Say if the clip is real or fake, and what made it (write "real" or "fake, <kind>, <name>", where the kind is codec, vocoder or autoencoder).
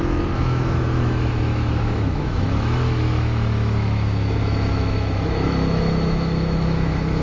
fake, autoencoder, DAC-VAE